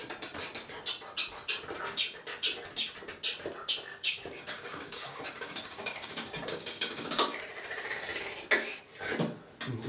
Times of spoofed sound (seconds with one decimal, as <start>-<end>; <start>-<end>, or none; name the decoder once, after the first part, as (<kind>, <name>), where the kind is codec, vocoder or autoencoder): 3.9-7.4 (codec, DAC)

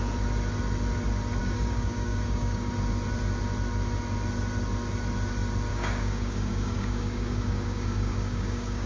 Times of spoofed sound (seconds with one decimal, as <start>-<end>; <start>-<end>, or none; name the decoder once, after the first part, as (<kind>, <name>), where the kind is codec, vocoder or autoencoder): 1.4-2.7 (codec, DAC); 5.7-8.9

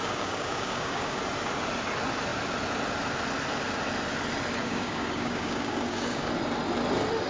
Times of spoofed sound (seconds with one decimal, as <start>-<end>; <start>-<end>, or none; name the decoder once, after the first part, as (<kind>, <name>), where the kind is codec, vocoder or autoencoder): 0.0-1.2 (codec, DAC); 4.6-6.3

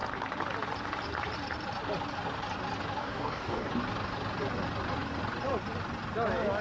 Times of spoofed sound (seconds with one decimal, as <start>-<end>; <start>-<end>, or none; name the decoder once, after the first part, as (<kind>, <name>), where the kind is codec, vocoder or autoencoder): 3.0-3.7 (codec, DAC)